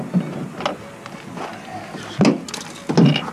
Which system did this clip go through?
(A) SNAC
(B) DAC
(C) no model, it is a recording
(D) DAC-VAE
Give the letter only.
C